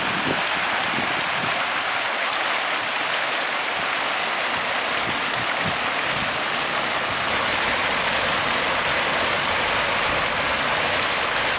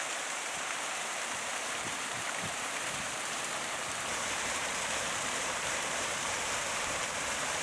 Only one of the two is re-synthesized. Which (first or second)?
second